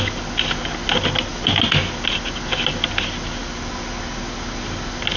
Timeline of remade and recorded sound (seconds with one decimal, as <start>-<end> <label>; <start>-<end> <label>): 0.0-5.2 recorded